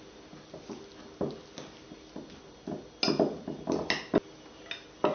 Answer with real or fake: real